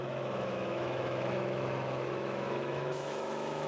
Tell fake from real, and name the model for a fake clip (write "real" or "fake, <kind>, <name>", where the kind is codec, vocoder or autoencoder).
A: fake, autoencoder, DAC-VAE